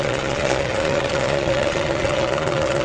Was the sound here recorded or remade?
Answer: remade